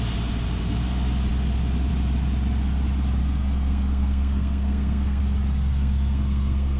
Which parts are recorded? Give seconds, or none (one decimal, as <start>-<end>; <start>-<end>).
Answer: 0.0-3.2; 5.2-5.7